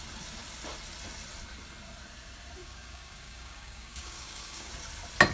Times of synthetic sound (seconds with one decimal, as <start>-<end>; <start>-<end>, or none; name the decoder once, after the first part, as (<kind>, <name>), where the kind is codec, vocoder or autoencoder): 2.6-4.7 (codec, DAC)